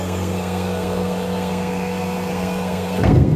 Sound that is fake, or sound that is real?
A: fake